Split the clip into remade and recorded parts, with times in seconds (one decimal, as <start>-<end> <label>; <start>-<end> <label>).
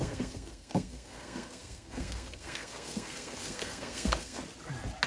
0.0-4.4 remade; 4.4-5.1 recorded